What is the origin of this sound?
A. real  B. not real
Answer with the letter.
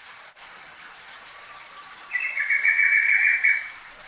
B